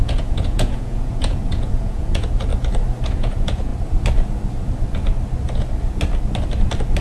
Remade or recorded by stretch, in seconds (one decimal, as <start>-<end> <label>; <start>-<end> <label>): 0.0-2.5 remade; 2.5-3.1 recorded; 3.1-3.7 remade; 3.7-7.0 recorded